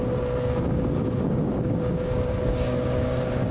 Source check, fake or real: fake